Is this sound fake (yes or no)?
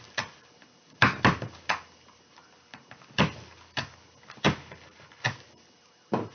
no